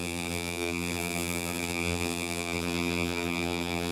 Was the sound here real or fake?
fake